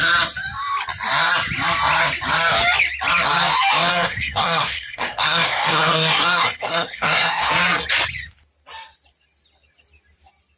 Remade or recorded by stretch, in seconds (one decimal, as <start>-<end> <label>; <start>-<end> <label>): 0.0-3.9 recorded; 3.9-7.5 remade; 7.5-10.6 recorded